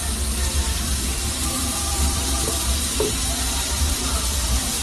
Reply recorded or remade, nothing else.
remade